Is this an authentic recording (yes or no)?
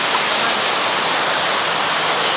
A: yes